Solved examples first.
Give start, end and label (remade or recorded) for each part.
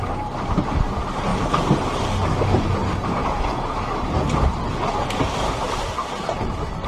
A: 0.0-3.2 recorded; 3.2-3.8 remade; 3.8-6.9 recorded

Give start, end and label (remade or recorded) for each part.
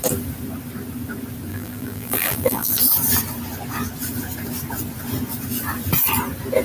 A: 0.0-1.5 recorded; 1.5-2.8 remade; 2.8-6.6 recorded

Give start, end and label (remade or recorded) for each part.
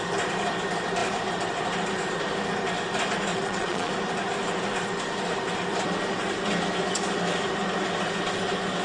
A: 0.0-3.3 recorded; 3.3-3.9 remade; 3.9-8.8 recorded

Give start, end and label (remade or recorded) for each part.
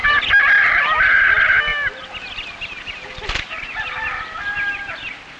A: 0.0-5.4 recorded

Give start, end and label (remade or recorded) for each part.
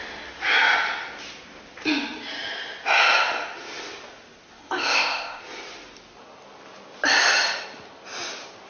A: 0.0-4.6 recorded; 4.6-5.4 remade; 5.4-8.7 recorded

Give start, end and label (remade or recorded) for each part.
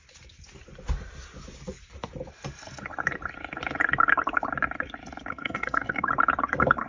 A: 0.0-5.3 recorded; 5.3-6.1 remade; 6.1-6.9 recorded